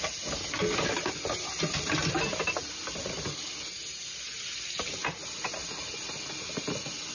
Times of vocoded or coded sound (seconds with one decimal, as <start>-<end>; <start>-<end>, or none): none